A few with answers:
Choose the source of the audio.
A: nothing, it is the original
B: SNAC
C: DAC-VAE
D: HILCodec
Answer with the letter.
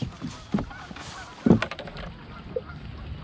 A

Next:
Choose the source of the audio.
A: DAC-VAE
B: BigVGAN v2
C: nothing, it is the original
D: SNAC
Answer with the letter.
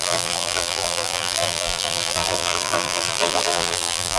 B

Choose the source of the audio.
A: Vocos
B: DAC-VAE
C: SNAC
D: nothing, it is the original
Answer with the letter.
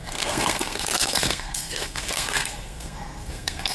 C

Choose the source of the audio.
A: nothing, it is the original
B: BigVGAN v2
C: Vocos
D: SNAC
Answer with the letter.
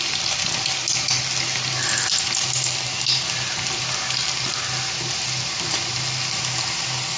A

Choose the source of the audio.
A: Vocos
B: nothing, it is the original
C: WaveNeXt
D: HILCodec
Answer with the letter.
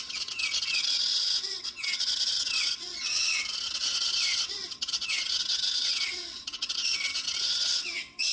C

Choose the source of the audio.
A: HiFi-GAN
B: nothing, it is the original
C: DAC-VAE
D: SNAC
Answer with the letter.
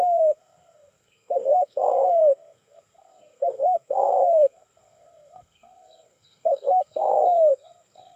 D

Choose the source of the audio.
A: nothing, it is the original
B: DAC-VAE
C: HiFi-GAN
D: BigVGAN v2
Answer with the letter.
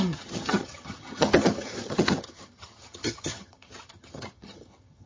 C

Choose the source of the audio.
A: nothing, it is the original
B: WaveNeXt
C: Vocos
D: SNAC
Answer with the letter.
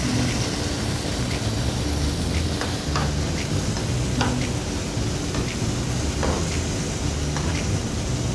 A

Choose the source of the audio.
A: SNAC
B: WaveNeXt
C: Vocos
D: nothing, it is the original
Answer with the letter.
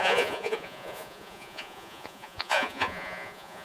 C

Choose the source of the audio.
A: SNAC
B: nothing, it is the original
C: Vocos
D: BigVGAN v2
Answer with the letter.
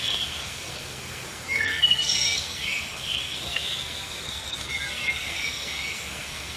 A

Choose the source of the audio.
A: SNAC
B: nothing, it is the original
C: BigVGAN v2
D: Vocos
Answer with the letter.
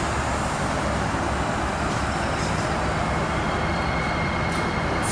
B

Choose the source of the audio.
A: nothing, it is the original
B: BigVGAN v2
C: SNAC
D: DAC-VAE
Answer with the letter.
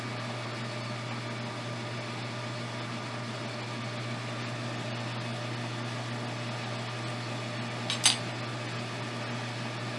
A